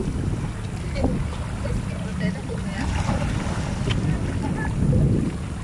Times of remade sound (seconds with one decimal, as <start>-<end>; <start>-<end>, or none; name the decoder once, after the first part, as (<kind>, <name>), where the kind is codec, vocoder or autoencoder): 2.1-4.3 (vocoder, BigVGAN v2)